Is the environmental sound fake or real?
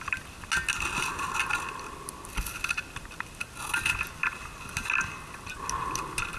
real